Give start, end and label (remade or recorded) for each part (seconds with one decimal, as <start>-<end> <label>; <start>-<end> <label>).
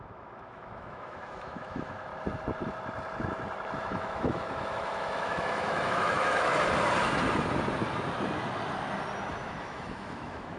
0.0-2.1 remade; 2.1-3.8 recorded; 3.8-6.5 remade; 6.5-9.6 recorded; 9.6-10.6 remade